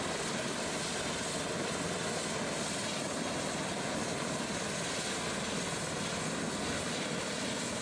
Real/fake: real